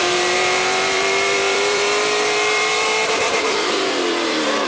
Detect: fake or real fake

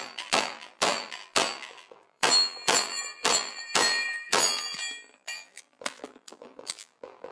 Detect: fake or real fake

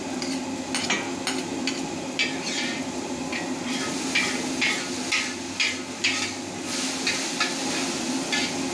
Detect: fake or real real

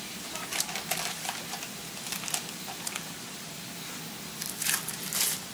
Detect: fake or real fake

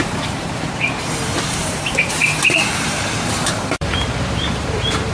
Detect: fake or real fake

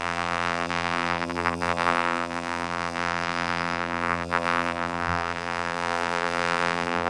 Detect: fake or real fake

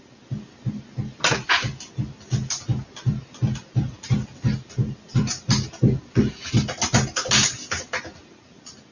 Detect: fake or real real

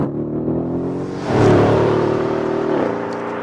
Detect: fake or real fake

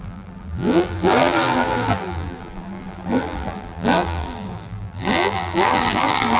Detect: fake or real fake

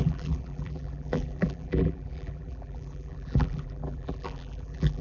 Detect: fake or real fake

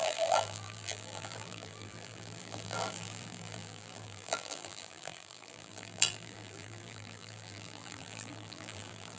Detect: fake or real fake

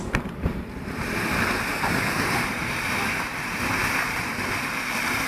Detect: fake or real fake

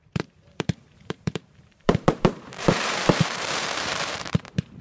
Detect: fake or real fake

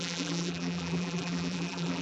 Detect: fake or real fake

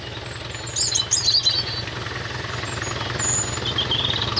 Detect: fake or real real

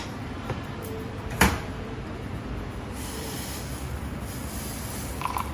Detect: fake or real fake